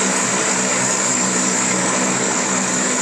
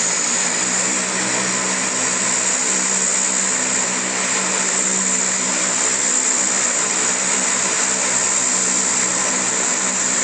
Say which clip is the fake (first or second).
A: first